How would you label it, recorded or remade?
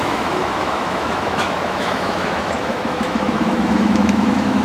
remade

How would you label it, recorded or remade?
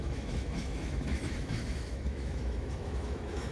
remade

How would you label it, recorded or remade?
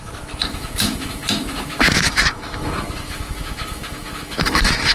remade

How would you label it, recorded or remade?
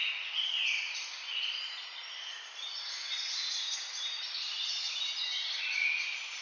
recorded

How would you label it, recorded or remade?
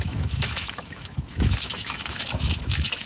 remade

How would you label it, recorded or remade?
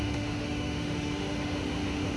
remade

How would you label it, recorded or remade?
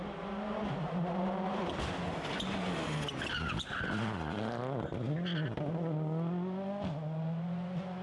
recorded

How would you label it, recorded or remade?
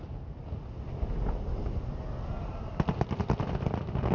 recorded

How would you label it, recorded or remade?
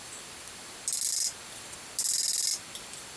recorded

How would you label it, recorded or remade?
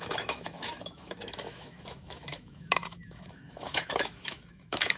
remade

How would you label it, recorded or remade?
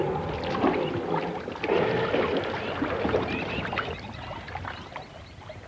recorded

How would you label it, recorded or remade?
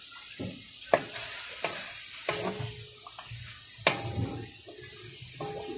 recorded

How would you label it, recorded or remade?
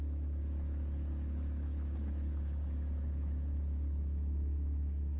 remade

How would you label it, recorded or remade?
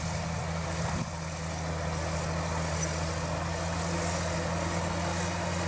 recorded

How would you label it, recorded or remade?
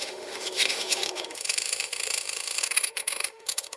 remade